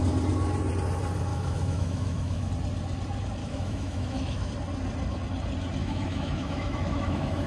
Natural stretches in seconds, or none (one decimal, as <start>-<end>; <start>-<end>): 0.0-1.3; 2.5-3.4; 4.5-5.8